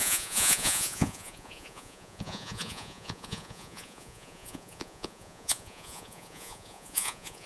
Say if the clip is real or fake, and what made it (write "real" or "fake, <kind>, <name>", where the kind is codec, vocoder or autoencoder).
fake, vocoder, Vocos